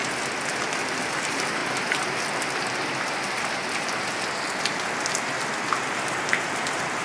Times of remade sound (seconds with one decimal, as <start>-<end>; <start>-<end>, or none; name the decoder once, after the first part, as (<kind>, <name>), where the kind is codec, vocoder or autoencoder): 1.2-1.6 (vocoder, BigVGAN v2); 5.8-7.0